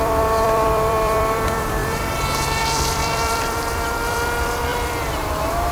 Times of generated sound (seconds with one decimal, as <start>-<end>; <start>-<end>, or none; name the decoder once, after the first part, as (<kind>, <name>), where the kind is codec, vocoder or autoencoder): 0.0-5.7 (vocoder, BigVGAN v2)